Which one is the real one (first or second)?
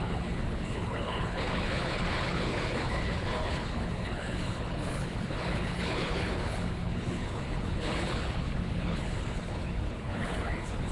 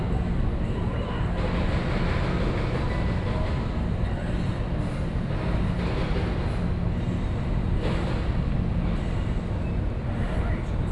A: second